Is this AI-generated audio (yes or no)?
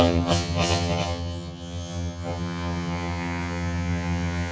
yes